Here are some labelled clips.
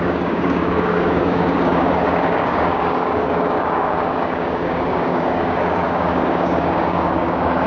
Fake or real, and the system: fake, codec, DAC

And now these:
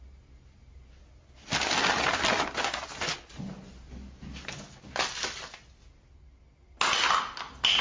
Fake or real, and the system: real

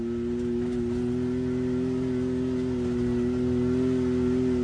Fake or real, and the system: real